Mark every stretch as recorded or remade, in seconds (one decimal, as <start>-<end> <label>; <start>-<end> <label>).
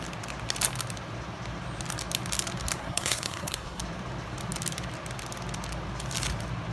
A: 0.0-2.8 recorded; 2.8-3.8 remade; 3.8-6.7 recorded